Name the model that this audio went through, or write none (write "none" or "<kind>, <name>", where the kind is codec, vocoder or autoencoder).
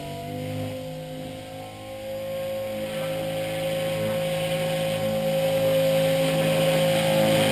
none